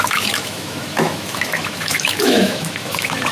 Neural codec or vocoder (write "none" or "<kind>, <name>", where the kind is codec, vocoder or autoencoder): autoencoder, DAC-VAE